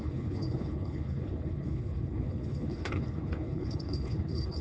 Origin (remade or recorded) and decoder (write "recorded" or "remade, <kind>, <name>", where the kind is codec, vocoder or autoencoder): remade, codec, HILCodec